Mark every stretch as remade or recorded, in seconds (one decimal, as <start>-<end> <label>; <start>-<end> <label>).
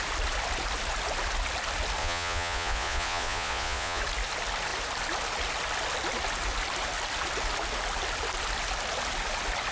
0.0-2.0 recorded; 2.0-4.0 remade; 4.0-9.7 recorded